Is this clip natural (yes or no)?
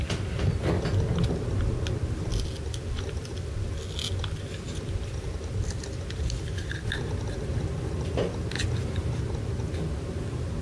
yes